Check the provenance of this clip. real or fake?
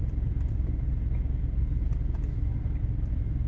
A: real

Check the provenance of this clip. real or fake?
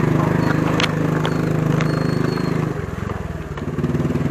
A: real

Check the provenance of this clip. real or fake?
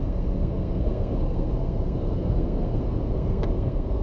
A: fake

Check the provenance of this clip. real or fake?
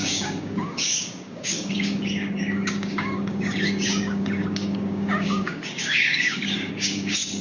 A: fake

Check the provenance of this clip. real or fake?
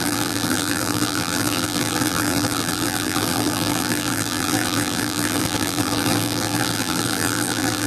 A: fake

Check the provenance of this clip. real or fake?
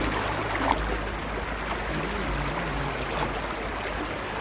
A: real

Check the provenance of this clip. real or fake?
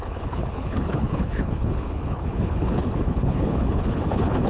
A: fake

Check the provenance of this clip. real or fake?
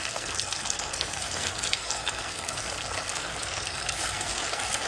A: fake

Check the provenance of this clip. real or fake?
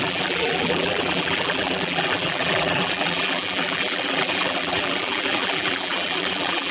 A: fake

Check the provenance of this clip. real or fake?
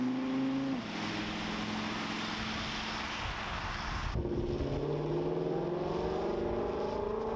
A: real